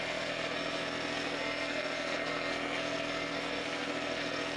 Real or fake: fake